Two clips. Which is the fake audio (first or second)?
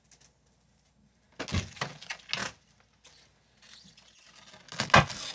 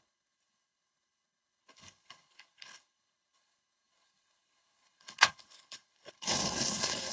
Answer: second